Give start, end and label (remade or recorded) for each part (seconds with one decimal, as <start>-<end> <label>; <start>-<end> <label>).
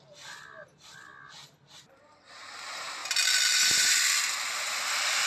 0.0-5.3 recorded